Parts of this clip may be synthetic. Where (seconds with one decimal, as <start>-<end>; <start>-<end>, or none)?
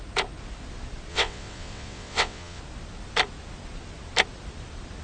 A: 1.1-2.6